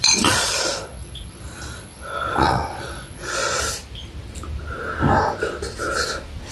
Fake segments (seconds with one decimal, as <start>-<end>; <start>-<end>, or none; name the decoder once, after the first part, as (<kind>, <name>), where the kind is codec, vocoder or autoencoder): 0.0-3.6 (vocoder, Vocos)